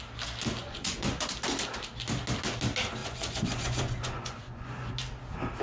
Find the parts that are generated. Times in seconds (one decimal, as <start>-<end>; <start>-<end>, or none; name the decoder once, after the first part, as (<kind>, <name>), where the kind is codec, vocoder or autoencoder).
0.6-1.3 (vocoder, Vocos); 3.0-4.9